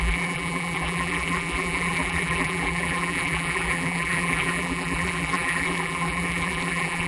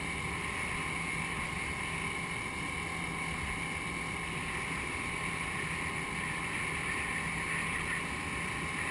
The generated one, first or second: first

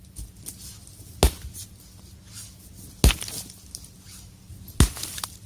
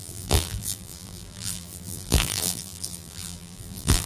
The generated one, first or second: second